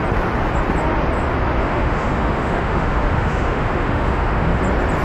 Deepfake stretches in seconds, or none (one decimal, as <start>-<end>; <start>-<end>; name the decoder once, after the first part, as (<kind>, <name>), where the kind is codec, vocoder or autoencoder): 1.6-4.6 (autoencoder, DAC-VAE)